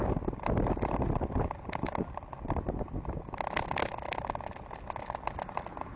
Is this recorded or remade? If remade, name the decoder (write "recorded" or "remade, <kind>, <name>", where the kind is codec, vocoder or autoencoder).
recorded